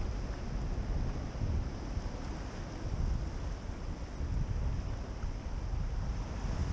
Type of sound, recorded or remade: recorded